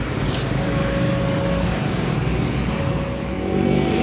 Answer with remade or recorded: remade